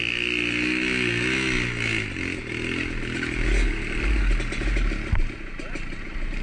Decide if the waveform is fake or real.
real